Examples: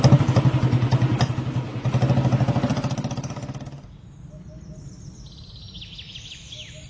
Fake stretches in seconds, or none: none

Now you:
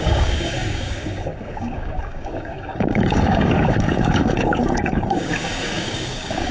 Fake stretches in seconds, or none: 0.0-6.5 (codec, DAC)

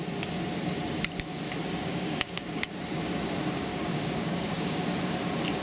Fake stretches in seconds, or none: 1.9-2.7 (codec, DAC); 3.7-5.0

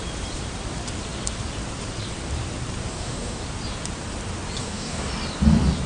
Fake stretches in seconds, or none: 2.9-3.4 (codec, DAC); 4.6-5.1

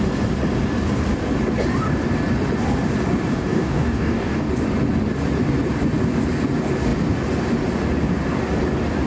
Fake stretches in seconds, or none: 3.3-4.5 (codec, DAC)

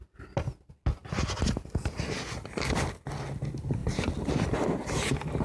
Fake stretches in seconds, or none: none

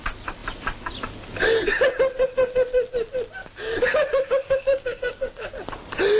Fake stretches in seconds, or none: 3.4-5.5 (codec, DAC)